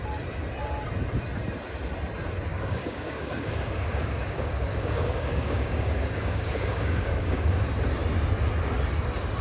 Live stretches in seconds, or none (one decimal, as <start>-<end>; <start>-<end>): 0.0-2.5; 7.6-9.4